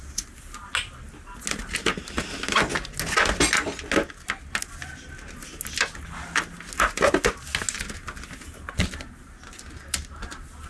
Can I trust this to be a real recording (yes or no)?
yes